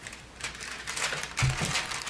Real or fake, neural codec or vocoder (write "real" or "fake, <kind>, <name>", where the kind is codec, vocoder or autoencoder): real